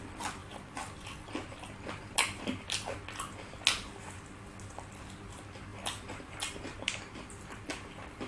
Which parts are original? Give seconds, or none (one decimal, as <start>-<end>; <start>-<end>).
0.0-8.3